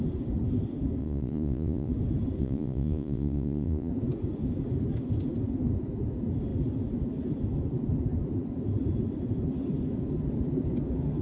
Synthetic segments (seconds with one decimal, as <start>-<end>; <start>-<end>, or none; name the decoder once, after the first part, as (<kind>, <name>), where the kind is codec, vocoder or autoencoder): 1.0-1.9 (vocoder, Vocos); 2.4-3.9